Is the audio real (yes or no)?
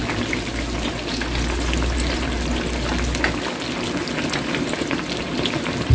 yes